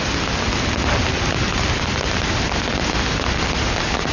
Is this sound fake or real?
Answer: real